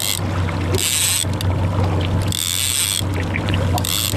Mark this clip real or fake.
real